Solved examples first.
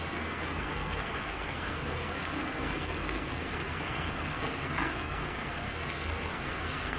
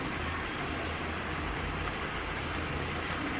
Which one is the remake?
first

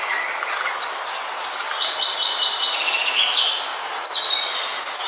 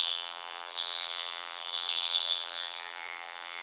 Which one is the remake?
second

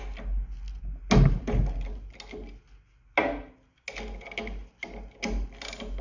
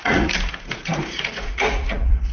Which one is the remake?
second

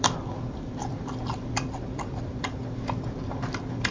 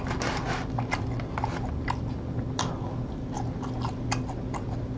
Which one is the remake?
first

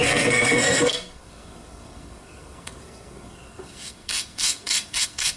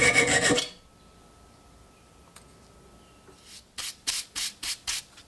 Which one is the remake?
first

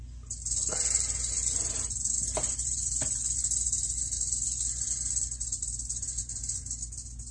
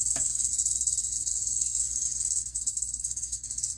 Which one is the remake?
second